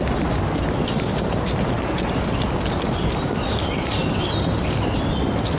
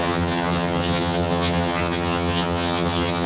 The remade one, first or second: second